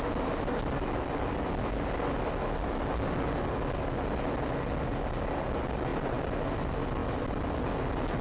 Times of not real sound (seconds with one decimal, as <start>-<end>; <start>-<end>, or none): none